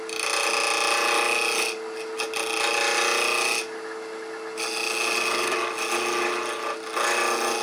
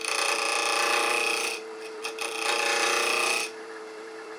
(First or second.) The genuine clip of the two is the first